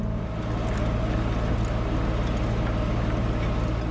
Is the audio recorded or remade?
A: recorded